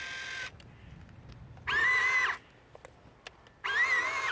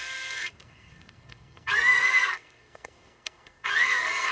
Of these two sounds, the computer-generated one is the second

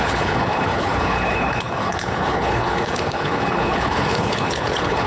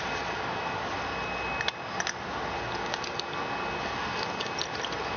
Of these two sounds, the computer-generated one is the first